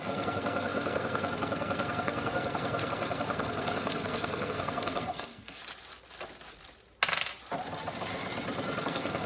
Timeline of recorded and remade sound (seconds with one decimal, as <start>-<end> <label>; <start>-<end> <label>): 0.0-5.6 remade; 5.6-8.8 recorded; 8.8-9.3 remade